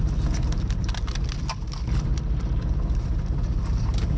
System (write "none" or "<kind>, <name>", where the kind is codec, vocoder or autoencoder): none